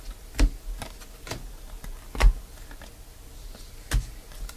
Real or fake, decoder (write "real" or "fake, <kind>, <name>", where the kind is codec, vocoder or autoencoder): real